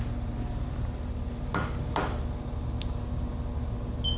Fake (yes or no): no